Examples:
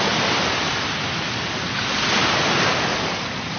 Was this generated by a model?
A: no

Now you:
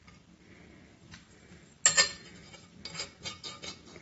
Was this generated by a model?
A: no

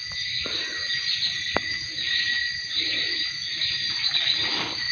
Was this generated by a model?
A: no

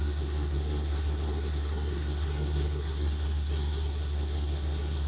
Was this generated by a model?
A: yes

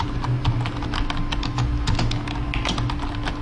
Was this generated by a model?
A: no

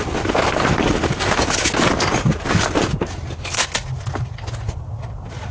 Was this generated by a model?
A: no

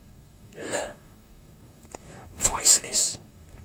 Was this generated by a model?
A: yes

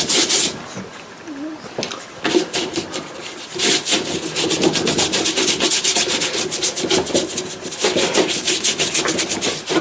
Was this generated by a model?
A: no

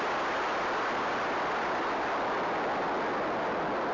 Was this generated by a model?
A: no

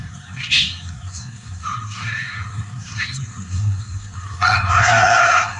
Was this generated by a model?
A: yes